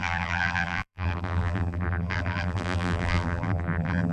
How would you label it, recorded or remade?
remade